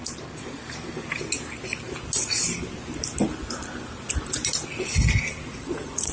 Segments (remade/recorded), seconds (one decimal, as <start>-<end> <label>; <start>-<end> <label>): 0.0-5.5 recorded; 5.5-6.1 remade